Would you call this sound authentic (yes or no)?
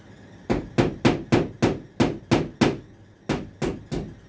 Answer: yes